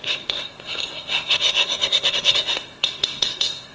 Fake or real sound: fake